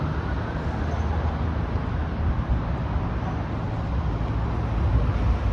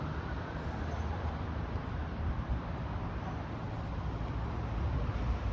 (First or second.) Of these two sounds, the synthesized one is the second